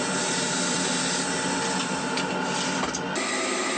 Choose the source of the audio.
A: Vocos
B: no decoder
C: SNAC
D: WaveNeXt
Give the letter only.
B